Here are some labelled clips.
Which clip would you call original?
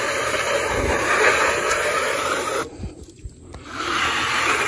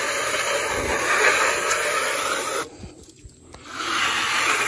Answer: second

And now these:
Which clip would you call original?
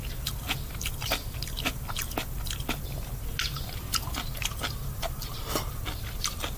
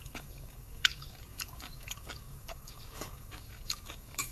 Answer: first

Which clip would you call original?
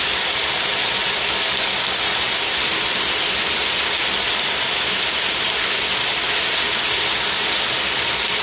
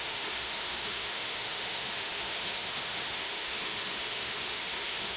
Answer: first